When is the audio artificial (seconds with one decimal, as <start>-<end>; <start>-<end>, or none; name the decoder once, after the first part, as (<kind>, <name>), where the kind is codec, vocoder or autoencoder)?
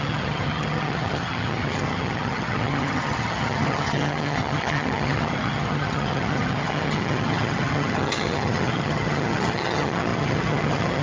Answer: 0.0-11.0 (vocoder, HiFi-GAN)